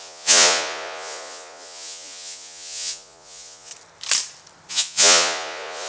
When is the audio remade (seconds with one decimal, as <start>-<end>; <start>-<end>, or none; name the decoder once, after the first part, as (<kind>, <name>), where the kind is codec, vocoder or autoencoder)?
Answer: 0.0-3.7 (vocoder, Vocos); 4.7-5.9